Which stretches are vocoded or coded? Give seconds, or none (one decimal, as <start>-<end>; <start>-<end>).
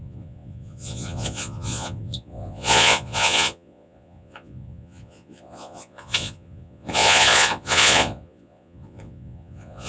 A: 0.0-9.9